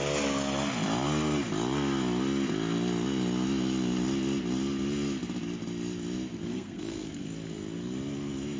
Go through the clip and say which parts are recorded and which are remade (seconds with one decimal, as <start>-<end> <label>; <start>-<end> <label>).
0.0-6.4 recorded; 6.4-7.3 remade; 7.3-8.6 recorded